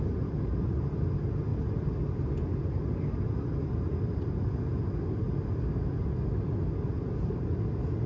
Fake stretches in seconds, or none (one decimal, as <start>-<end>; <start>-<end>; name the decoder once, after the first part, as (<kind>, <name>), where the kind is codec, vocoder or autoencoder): none